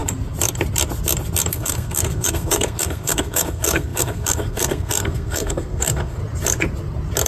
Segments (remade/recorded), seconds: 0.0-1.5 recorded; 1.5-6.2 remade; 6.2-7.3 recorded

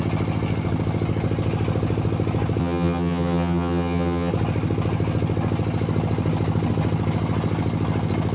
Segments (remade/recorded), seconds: 0.0-2.6 recorded; 2.6-4.3 remade; 4.3-8.3 recorded

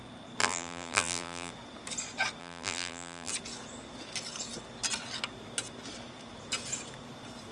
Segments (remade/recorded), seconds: 0.0-0.4 recorded; 0.4-1.5 remade; 1.5-2.4 recorded; 2.4-3.3 remade; 3.3-7.5 recorded

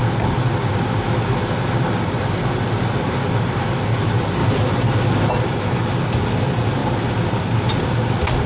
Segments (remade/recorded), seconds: 0.0-8.5 recorded